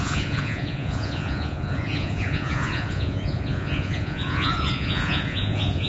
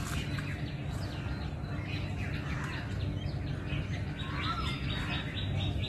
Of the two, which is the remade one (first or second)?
first